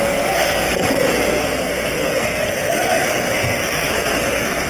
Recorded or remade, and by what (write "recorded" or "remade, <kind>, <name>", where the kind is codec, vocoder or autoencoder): remade, codec, SNAC